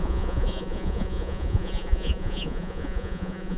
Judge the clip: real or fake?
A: fake